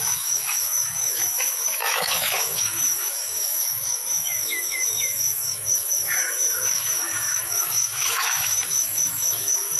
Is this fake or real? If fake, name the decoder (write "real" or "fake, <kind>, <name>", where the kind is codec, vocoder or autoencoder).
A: fake, autoencoder, DAC-VAE